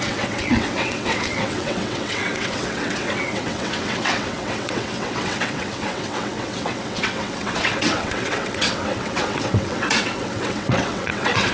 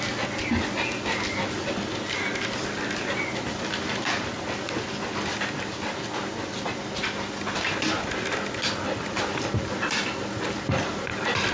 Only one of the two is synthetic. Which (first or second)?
first